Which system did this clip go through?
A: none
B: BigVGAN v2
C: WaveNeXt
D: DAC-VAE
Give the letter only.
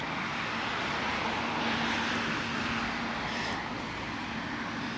A